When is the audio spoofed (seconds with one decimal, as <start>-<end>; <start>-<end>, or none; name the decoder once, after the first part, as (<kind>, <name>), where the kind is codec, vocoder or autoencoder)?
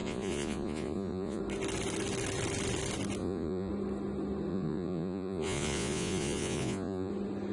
0.0-1.4 (vocoder, Vocos); 3.2-3.7; 4.5-7.1